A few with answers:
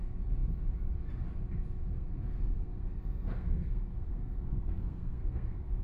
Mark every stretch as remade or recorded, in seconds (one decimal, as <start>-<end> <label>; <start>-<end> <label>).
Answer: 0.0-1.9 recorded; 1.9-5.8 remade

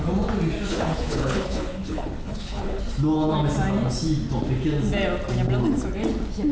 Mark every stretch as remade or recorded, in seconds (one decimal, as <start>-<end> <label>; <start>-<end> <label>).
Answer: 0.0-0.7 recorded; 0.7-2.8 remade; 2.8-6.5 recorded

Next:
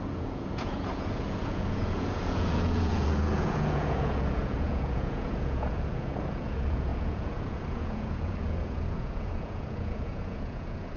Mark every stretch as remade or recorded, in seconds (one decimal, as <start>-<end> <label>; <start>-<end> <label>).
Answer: 0.0-11.0 remade

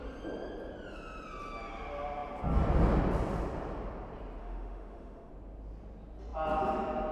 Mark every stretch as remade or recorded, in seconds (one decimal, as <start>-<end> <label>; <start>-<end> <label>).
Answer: 0.0-4.4 recorded; 4.4-5.3 remade; 5.3-7.1 recorded

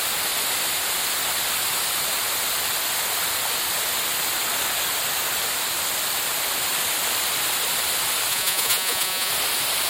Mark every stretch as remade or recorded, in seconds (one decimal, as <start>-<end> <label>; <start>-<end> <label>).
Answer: 0.0-8.3 recorded; 8.3-9.3 remade; 9.3-9.9 recorded

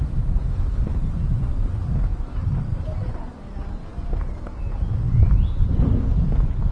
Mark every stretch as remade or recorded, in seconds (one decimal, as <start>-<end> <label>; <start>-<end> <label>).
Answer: 0.0-6.7 recorded